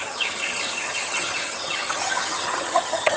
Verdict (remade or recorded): remade